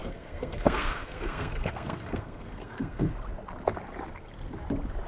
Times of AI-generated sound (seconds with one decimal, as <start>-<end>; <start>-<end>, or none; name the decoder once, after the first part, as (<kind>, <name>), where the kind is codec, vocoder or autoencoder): 0.0-3.1 (codec, SNAC)